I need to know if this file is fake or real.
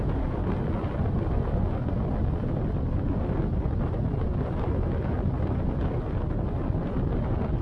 real